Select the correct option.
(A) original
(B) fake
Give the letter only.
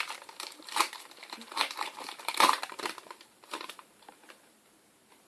B